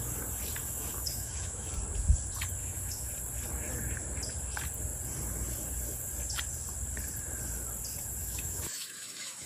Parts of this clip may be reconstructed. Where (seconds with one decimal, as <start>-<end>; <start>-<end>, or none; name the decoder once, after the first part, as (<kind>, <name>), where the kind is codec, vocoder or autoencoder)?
0.6-1.7 (autoencoder, DAC-VAE); 2.6-3.1; 8.2-9.5